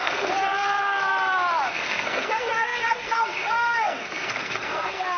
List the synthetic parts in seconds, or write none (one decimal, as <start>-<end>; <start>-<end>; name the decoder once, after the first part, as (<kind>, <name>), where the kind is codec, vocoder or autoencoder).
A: 0.0-1.1 (codec, SNAC); 1.7-5.2